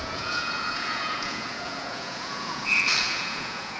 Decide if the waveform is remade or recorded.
remade